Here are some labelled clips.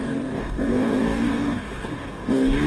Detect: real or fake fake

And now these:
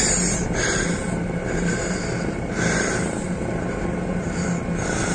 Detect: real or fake fake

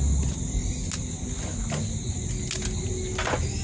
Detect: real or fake real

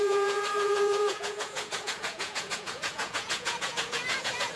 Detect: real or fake fake